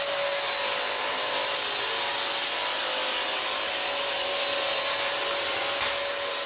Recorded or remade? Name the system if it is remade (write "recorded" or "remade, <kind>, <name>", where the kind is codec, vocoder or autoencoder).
recorded